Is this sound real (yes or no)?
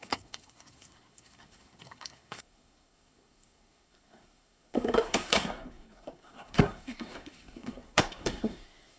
no